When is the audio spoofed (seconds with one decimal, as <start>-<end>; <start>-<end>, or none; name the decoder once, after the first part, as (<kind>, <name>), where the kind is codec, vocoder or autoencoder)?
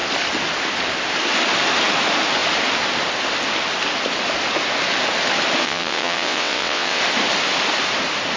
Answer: 5.6-7.0 (vocoder, WaveNeXt)